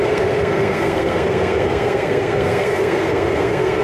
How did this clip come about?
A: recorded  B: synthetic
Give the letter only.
B